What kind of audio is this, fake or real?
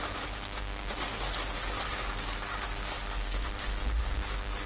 real